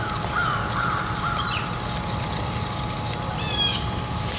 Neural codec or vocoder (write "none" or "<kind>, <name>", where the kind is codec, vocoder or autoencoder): none